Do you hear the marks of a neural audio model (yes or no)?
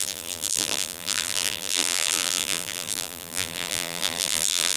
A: yes